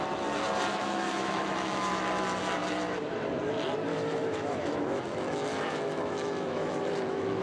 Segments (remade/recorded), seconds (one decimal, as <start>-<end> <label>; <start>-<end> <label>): 0.0-0.7 recorded; 0.7-1.9 remade; 1.9-3.9 recorded; 3.9-7.4 remade